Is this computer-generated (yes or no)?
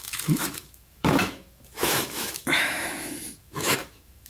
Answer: yes